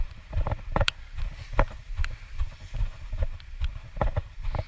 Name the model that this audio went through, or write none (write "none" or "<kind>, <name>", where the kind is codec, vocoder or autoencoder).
none